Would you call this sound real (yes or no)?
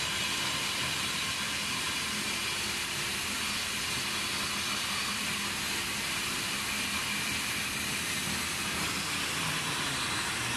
yes